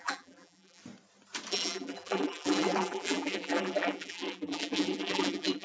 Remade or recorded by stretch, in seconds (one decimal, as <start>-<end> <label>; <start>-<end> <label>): 0.0-0.8 remade; 0.8-1.5 recorded; 1.5-5.6 remade